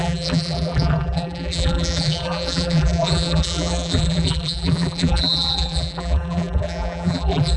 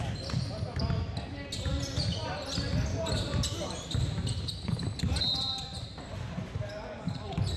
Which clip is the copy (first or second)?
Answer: first